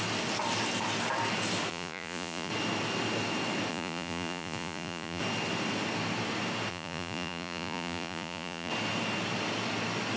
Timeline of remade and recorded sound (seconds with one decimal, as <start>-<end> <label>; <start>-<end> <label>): 0.0-1.7 recorded; 1.7-2.5 remade; 2.5-3.7 recorded; 3.7-5.2 remade; 5.2-6.7 recorded; 6.7-8.7 remade; 8.7-10.2 recorded